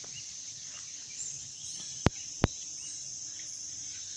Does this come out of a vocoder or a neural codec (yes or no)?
no